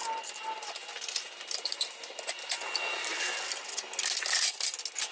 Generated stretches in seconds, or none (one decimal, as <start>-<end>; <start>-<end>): 0.0-3.1